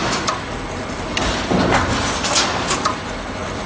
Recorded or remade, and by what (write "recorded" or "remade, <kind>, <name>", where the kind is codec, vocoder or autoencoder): recorded